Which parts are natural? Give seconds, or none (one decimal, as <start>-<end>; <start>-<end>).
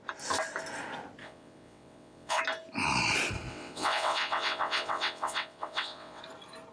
0.0-1.2; 2.4-3.5; 6.2-6.7